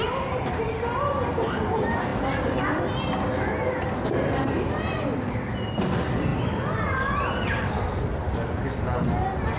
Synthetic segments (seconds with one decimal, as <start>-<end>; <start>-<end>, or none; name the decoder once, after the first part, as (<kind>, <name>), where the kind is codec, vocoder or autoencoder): none

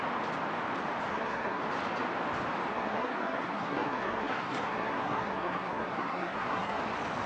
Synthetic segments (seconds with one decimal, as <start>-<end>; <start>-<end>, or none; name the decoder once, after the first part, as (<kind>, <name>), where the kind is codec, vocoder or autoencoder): 1.1-1.6 (codec, SNAC); 2.7-6.8

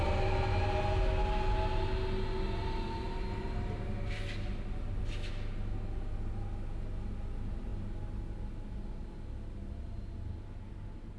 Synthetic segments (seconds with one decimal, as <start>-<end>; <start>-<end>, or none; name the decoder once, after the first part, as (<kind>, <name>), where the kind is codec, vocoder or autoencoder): none